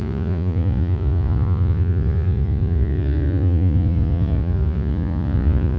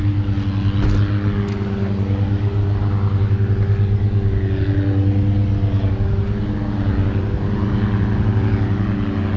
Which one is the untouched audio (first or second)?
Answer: second